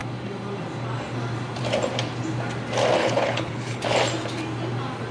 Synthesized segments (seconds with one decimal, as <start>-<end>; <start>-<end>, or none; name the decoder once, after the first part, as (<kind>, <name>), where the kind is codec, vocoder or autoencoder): 3.0-3.8 (codec, HILCodec)